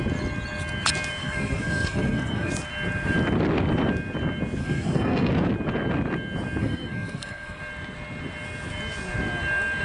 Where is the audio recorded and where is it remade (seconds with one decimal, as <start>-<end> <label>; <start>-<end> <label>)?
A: 0.0-1.2 recorded; 1.2-2.5 remade; 2.5-4.6 recorded; 4.6-5.3 remade; 5.3-6.6 recorded; 6.6-7.6 remade; 7.6-9.8 recorded